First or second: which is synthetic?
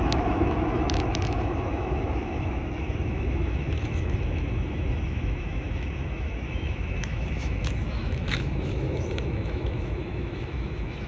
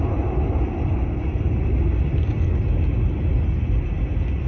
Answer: first